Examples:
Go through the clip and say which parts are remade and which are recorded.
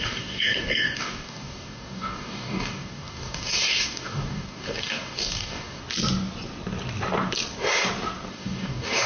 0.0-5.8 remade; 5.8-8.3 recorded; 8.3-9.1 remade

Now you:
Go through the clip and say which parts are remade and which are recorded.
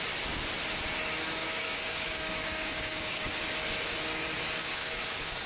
0.0-1.4 recorded; 1.4-3.3 remade; 3.3-4.6 recorded; 4.6-5.5 remade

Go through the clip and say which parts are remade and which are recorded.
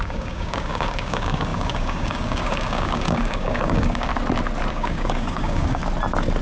0.0-4.1 remade; 4.1-4.7 recorded; 4.7-5.8 remade; 5.8-6.4 recorded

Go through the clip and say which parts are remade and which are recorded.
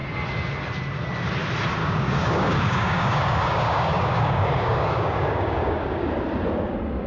0.0-1.8 recorded; 1.8-6.1 remade; 6.1-7.1 recorded